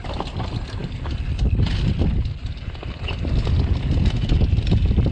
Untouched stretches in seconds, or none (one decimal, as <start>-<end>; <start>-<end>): 0.0-5.1

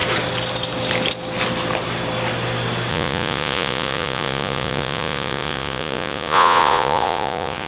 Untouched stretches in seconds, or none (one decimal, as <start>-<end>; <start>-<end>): 0.0-2.9

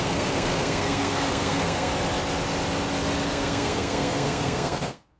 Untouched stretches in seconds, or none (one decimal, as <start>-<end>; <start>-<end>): 1.9-3.3

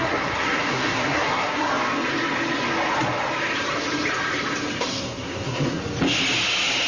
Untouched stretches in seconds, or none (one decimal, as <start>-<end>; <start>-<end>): 1.7-4.8; 5.8-6.9

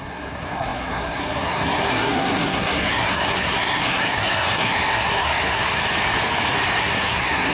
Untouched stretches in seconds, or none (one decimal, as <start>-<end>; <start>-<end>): 5.8-6.8

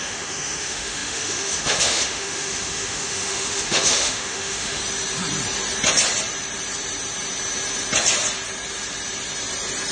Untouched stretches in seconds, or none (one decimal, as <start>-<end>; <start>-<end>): 4.8-9.9

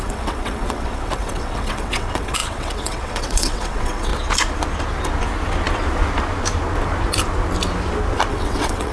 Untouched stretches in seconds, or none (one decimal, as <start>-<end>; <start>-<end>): 4.1-8.3

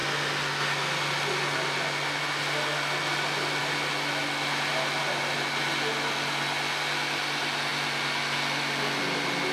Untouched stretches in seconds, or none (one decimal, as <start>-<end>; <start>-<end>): 0.0-9.5